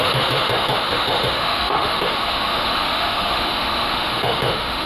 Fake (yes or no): yes